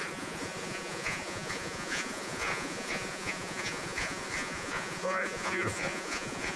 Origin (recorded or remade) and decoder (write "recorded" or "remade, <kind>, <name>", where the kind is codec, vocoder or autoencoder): remade, vocoder, Vocos